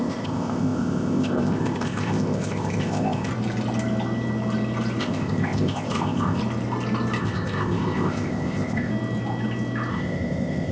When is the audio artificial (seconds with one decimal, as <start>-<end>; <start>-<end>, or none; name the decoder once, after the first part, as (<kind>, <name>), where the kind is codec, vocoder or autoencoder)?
0.0-3.3 (codec, ZipCodec); 5.0-6.4; 7.2-8.9; 9.9-10.7